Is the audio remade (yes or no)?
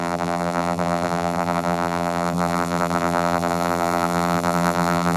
yes